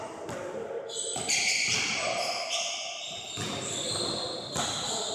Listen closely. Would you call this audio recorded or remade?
recorded